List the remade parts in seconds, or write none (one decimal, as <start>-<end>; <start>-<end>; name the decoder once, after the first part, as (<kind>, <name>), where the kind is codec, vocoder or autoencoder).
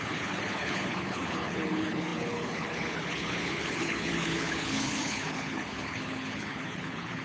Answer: 0.0-7.2 (codec, HILCodec)